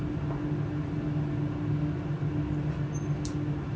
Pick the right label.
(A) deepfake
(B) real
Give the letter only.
B